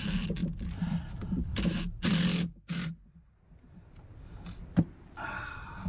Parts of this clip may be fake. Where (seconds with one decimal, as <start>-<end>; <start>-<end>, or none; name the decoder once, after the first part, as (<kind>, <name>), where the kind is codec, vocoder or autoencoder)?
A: none